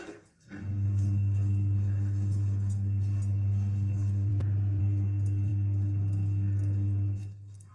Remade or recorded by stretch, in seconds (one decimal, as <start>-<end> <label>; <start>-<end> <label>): 0.0-4.3 remade; 4.3-4.8 recorded; 4.8-7.7 remade